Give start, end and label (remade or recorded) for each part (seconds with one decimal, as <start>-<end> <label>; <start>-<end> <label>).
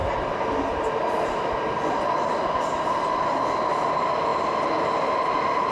0.0-5.7 recorded